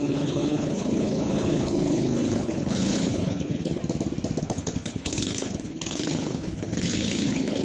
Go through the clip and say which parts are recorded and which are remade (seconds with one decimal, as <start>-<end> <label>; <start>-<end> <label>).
0.0-3.8 remade; 3.8-4.4 recorded; 4.4-7.6 remade